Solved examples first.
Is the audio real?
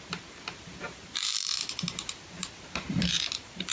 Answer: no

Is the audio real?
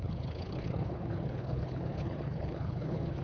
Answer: no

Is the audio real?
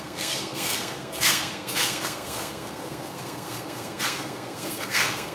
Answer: no